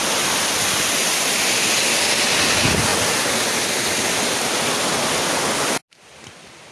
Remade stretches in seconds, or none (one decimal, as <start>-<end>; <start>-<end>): none